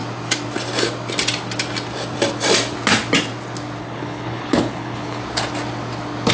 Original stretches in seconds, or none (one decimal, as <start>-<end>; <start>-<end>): 0.0-3.8; 5.2-6.3